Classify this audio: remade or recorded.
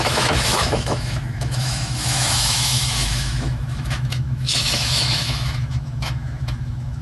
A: remade